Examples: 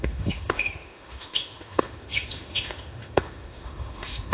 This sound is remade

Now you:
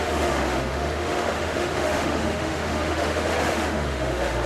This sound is remade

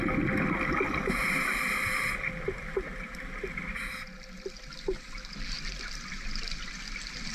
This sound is recorded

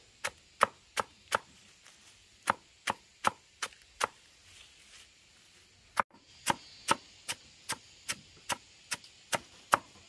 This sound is recorded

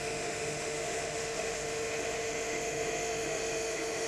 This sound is remade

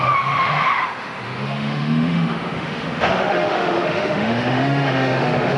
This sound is remade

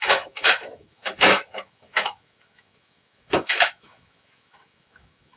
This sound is remade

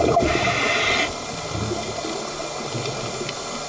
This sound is recorded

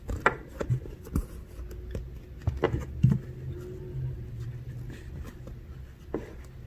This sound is recorded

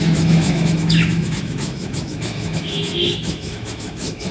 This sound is remade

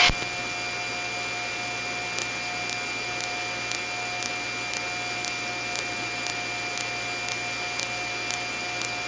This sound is recorded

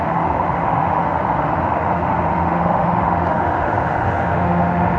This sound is remade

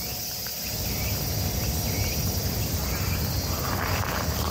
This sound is recorded